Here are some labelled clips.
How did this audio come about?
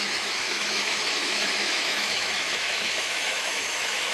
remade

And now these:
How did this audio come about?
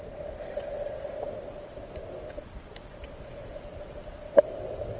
recorded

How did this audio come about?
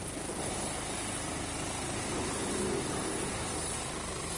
recorded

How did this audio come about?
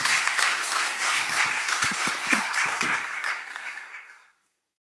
remade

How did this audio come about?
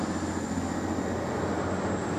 recorded